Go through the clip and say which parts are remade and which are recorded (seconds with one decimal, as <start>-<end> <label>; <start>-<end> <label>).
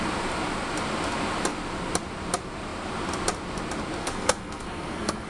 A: 0.0-4.0 recorded; 4.0-5.3 remade